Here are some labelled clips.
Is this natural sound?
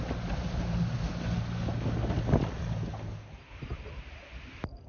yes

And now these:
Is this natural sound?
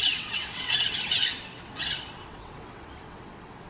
no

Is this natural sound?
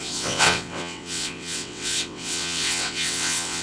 no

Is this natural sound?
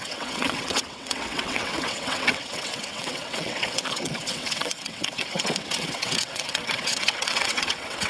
no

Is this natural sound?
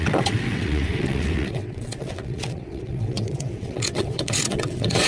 no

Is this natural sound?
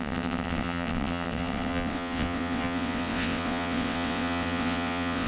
no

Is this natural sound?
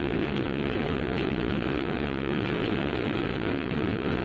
no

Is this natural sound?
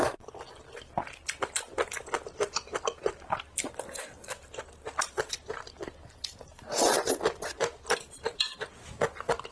yes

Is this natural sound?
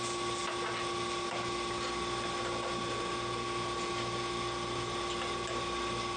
yes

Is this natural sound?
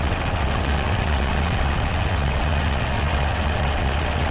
no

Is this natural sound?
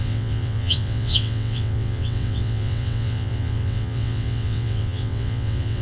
no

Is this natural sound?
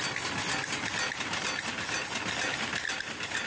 yes